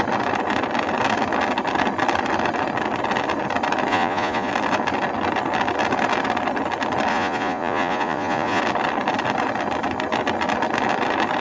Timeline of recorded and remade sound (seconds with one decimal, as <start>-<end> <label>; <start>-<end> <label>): 0.0-3.9 recorded; 3.9-4.5 remade; 4.5-7.1 recorded; 7.1-8.6 remade; 8.6-11.4 recorded

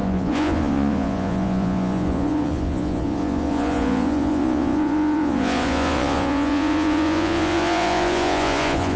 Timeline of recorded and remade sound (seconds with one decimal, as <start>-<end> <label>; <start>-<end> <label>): 0.0-9.0 remade

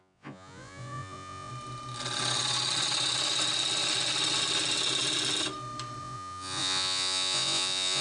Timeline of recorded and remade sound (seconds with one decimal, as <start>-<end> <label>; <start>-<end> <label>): 0.0-1.5 remade; 1.5-6.0 recorded; 6.0-8.0 remade

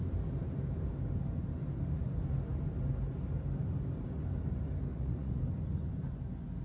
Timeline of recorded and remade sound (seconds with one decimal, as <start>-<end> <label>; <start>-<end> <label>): 0.0-4.9 recorded; 4.9-5.4 remade; 5.4-6.6 recorded

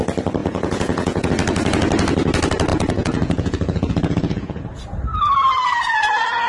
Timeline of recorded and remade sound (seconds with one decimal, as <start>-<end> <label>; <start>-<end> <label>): 0.0-0.4 recorded; 0.4-1.3 remade; 1.3-2.7 recorded; 2.7-4.6 remade; 4.6-6.5 recorded